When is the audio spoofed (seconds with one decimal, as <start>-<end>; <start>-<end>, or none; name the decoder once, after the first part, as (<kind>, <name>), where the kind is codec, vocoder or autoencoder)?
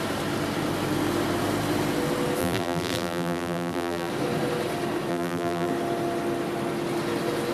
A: 2.4-4.1 (vocoder, BigVGAN v2); 5.1-5.7